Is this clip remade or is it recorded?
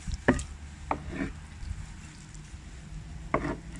recorded